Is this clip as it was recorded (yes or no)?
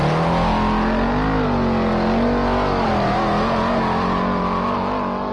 yes